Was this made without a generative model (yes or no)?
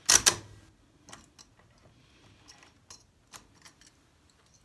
yes